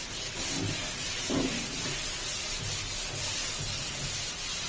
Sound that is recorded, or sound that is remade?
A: recorded